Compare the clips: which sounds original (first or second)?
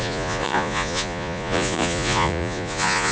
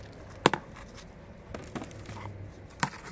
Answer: second